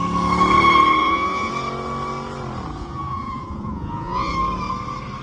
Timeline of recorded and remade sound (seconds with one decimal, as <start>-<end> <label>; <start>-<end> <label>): 0.0-1.0 recorded; 1.0-1.5 remade; 1.5-2.8 recorded; 2.8-4.3 remade; 4.3-5.2 recorded